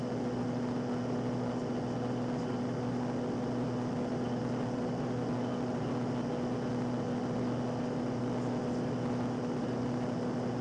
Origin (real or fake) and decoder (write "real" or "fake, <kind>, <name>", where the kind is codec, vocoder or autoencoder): real